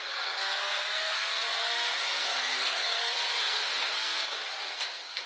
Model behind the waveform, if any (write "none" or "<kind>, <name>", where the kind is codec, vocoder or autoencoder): codec, SNAC